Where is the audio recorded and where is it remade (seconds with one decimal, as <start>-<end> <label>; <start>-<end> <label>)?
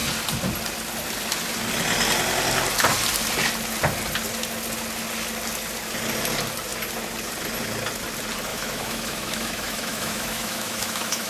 0.0-8.5 recorded; 8.5-11.3 remade